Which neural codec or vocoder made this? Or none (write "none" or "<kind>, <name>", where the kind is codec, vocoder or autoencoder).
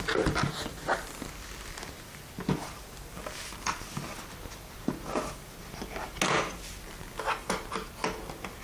none